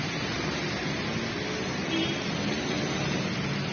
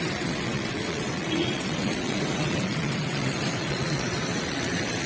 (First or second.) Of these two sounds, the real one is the first